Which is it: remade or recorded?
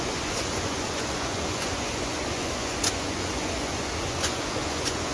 remade